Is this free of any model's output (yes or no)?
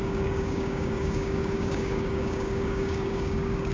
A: no